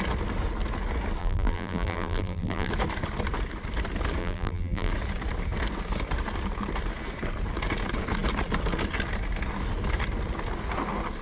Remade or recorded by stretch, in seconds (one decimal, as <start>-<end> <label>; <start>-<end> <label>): 0.0-1.2 recorded; 1.2-2.7 remade; 2.7-4.2 recorded; 4.2-4.9 remade; 4.9-11.2 recorded